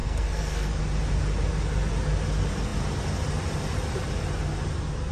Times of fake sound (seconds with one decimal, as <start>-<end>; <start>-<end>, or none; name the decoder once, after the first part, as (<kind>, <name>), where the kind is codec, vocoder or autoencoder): 0.0-0.8 (codec, SNAC)